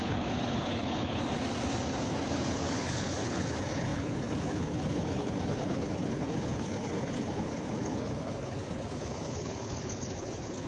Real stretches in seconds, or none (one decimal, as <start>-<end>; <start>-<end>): 1.2-2.0

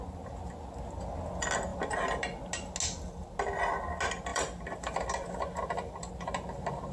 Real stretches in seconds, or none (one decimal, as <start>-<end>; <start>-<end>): 0.0-1.7; 2.4-4.3; 6.1-6.9

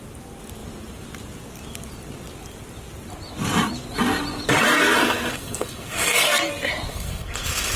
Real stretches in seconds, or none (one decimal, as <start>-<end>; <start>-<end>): 0.0-5.0; 6.5-6.9

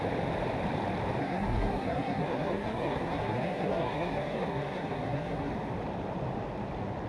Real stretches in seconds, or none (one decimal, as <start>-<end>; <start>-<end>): 0.0-1.2; 5.5-7.1

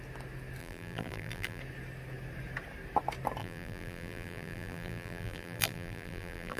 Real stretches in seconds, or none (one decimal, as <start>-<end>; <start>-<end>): 0.0-0.6; 1.6-3.4